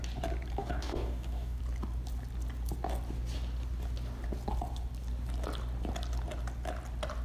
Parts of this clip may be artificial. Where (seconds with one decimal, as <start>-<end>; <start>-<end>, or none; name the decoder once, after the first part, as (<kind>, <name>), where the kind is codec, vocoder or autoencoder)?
0.6-1.6 (codec, DAC)